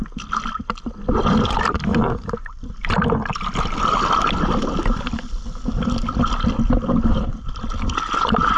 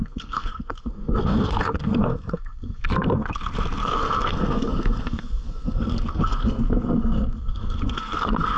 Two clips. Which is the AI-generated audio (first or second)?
second